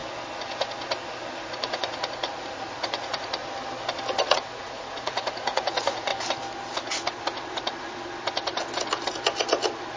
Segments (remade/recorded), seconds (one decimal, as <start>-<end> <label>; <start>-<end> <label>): 0.0-1.4 recorded; 1.4-3.4 remade; 3.4-4.2 recorded; 4.2-6.1 remade; 6.1-10.0 recorded